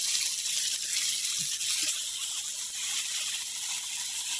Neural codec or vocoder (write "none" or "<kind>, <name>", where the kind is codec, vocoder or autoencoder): none